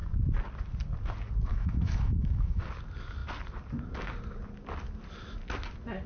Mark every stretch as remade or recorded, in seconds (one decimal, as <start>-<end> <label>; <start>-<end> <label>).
0.0-1.5 recorded; 1.5-2.6 remade; 2.6-6.1 recorded